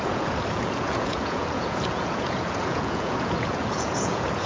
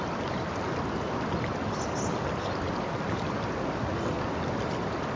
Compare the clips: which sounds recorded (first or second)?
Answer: second